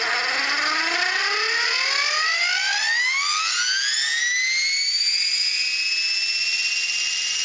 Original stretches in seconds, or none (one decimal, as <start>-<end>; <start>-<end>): 0.0-7.4